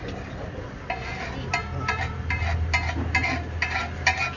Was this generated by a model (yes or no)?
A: no